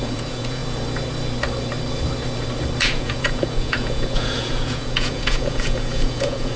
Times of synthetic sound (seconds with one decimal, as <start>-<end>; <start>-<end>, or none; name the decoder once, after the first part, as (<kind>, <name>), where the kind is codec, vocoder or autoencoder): 0.0-0.6 (vocoder, Vocos); 2.8-6.6